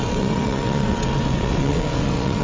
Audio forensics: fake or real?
fake